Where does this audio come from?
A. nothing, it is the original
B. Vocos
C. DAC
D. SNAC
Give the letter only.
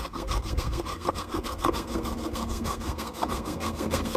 D